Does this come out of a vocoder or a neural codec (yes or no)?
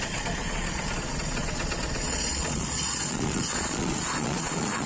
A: yes